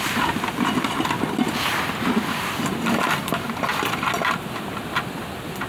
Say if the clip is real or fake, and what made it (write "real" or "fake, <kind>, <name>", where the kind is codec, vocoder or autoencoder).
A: real